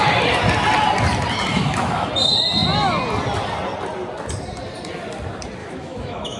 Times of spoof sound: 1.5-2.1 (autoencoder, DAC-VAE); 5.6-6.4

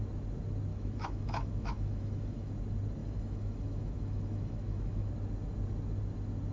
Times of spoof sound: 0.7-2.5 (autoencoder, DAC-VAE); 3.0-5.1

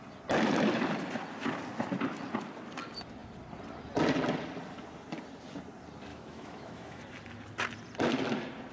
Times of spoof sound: 6.1-7.0 (autoencoder, DAC-VAE)

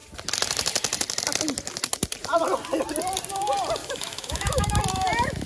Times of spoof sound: 3.8-4.8 (autoencoder, DAC-VAE)

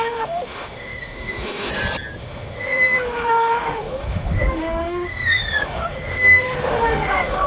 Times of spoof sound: 0.0-1.7 (autoencoder, DAC-VAE); 2.2-7.5

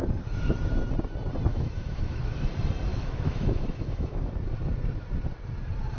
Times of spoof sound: 1.5-2.2 (autoencoder, DAC-VAE); 2.9-4.3

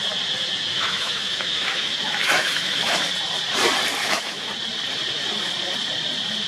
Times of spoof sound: 0.7-3.0 (autoencoder, DAC-VAE); 4.0-4.5